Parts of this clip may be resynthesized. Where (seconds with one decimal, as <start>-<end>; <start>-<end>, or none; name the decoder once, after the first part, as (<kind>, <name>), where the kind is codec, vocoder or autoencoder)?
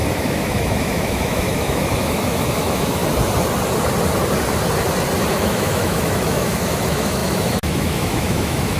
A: 0.0-3.0 (autoencoder, DAC-VAE); 5.3-8.8